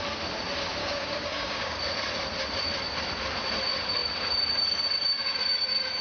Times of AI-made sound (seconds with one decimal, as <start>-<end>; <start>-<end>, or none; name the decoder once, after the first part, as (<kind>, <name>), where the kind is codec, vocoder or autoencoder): 0.8-1.8 (codec, DAC)